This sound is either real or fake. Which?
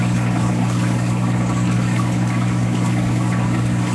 fake